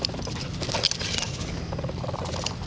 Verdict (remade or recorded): recorded